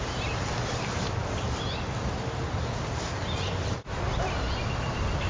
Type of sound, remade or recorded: recorded